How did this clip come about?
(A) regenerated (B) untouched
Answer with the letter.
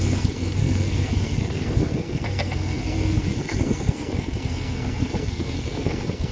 A